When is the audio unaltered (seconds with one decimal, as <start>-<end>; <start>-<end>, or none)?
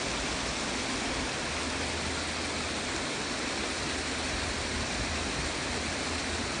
0.0-6.6